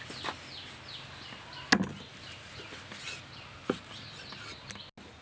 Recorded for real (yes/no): yes